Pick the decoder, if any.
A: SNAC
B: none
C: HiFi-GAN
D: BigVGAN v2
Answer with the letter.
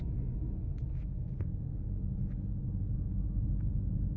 B